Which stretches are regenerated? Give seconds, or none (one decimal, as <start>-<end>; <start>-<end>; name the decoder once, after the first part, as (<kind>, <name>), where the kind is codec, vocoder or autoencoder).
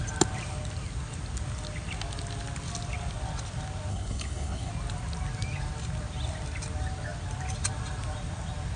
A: 3.9-4.7 (codec, HILCodec)